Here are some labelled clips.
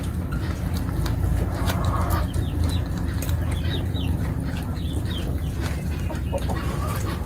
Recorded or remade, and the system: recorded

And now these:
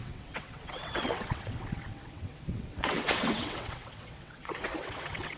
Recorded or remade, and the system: remade, vocoder, WaveNeXt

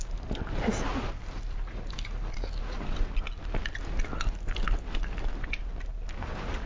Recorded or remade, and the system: recorded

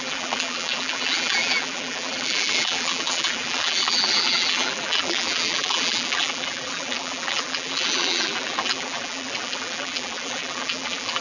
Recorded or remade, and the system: remade, vocoder, BigVGAN v2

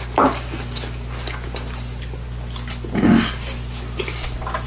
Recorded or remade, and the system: recorded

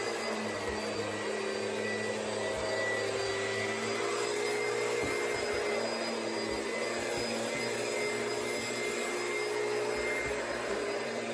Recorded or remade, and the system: recorded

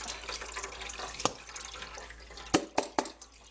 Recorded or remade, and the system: recorded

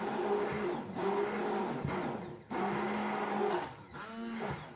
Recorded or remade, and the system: recorded